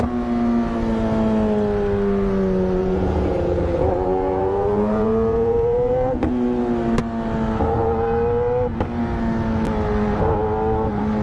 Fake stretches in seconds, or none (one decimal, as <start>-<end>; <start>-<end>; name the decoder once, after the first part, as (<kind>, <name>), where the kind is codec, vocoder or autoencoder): 2.8-6.2 (vocoder, Vocos)